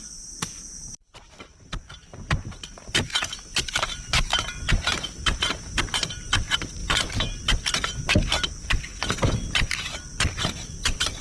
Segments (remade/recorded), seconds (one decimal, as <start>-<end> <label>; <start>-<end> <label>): 0.0-6.8 remade; 6.8-10.2 recorded; 10.2-11.2 remade

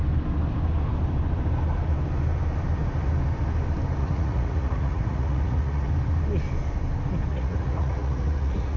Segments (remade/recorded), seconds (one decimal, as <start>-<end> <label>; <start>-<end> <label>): 0.0-4.0 recorded; 4.0-5.9 remade; 5.9-7.3 recorded; 7.3-8.8 remade

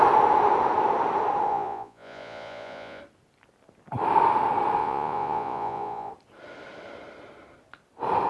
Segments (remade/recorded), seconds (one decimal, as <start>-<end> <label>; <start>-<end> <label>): 0.0-1.5 recorded; 1.5-3.0 remade; 3.0-4.8 recorded; 4.8-6.1 remade; 6.1-8.3 recorded

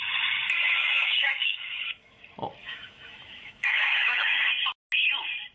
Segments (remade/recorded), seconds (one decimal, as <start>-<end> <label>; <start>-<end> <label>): 0.0-0.8 recorded; 0.8-2.2 remade; 2.2-2.6 recorded; 2.6-4.5 remade; 4.5-5.5 recorded

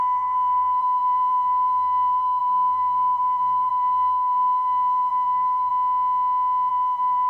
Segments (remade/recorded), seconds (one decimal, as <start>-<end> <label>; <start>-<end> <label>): 0.0-5.7 remade; 5.7-6.7 recorded; 6.7-7.3 remade

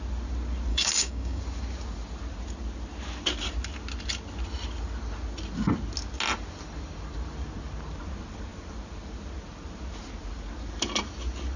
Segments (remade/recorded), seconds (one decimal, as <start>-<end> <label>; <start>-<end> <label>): 0.0-0.7 recorded; 0.7-1.4 remade; 1.4-11.6 recorded

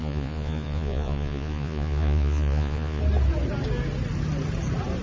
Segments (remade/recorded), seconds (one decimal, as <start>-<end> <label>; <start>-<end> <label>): 0.0-3.0 remade; 3.0-5.0 recorded